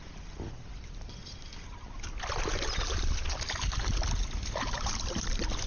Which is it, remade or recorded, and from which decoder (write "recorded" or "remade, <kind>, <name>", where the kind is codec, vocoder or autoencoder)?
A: recorded